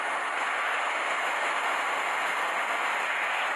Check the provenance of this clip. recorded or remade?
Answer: recorded